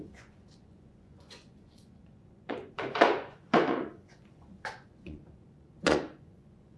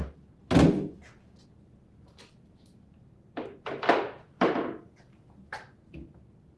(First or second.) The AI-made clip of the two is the first